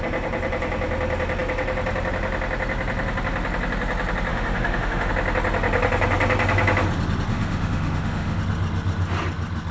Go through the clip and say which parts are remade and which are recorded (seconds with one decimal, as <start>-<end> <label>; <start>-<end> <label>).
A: 0.0-4.3 recorded; 4.3-5.1 remade; 5.1-7.3 recorded; 7.3-8.4 remade; 8.4-9.7 recorded